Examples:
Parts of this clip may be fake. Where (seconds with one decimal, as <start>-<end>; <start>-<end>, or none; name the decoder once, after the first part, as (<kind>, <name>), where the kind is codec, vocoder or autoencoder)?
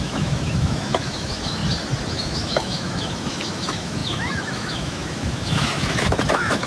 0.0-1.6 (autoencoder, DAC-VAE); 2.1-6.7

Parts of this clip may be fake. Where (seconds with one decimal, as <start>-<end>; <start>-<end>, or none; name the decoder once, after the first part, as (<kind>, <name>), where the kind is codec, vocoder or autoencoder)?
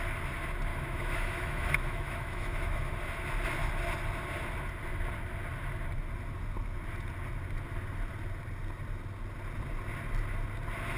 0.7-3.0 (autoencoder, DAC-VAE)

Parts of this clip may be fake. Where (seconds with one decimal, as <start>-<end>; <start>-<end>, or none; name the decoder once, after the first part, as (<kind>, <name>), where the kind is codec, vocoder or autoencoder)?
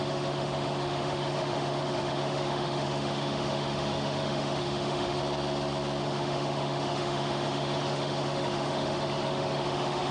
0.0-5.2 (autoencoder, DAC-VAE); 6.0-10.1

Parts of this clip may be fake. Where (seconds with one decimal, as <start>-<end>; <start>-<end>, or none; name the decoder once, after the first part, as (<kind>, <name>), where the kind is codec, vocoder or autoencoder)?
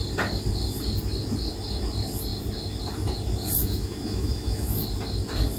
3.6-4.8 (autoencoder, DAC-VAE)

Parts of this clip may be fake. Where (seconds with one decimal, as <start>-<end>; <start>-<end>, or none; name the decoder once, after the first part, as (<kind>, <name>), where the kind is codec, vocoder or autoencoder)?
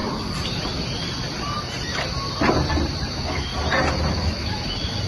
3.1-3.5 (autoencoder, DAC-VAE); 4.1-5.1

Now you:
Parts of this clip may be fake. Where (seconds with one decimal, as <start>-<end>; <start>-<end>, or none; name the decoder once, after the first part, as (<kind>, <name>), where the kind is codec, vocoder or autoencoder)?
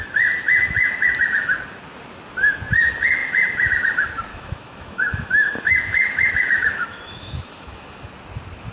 4.3-8.1 (autoencoder, DAC-VAE)